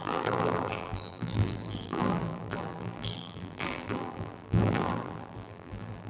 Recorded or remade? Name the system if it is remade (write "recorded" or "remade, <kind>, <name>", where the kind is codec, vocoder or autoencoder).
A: remade, vocoder, BigVGAN v2